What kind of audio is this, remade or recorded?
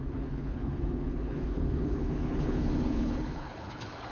remade